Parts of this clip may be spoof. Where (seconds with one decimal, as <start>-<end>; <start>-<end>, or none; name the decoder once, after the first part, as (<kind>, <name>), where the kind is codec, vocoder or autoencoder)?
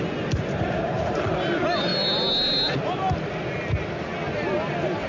none